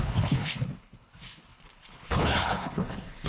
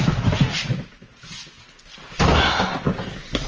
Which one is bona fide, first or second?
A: second